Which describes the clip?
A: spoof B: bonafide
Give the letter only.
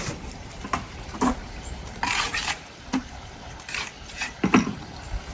A